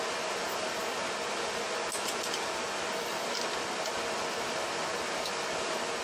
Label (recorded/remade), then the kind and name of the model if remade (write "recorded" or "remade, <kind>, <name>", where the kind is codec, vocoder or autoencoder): recorded